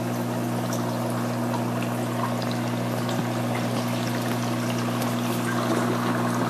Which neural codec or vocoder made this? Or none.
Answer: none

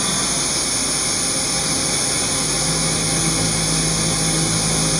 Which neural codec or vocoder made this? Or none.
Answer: none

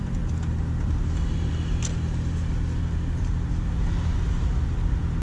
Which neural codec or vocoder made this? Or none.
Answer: none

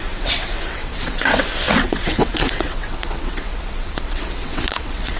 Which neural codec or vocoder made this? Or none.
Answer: vocoder, WaveNeXt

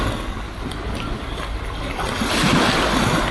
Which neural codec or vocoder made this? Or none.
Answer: none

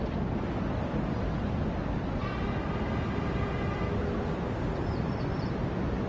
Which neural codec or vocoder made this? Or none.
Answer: none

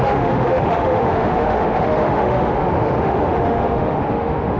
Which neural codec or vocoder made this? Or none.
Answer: autoencoder, DAC-VAE